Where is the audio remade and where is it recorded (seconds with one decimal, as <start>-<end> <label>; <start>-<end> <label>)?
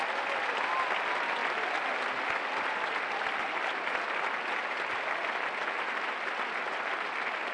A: 0.0-7.5 recorded